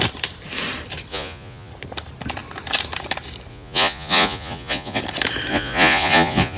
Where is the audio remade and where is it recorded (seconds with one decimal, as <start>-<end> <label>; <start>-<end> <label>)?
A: 0.0-1.1 recorded; 1.1-1.7 remade; 1.7-3.5 recorded; 3.5-5.0 remade; 5.0-5.5 recorded; 5.5-6.6 remade